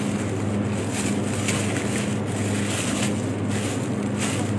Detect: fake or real real